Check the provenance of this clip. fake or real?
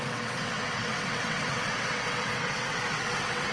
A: fake